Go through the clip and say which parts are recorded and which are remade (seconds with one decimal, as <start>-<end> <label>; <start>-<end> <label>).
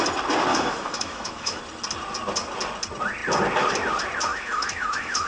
0.0-0.5 recorded; 0.5-1.6 remade; 1.6-4.3 recorded; 4.3-5.3 remade